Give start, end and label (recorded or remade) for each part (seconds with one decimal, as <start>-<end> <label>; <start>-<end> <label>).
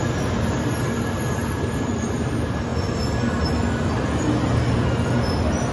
0.0-5.7 recorded